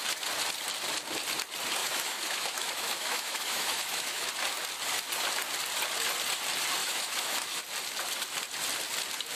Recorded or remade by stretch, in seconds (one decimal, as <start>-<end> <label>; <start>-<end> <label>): 0.0-1.8 recorded; 1.8-4.3 remade; 4.3-6.8 recorded; 6.8-7.6 remade; 7.6-9.4 recorded